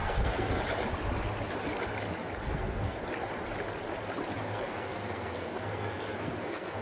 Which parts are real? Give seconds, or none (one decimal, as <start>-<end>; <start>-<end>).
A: 0.6-2.4; 3.0-4.4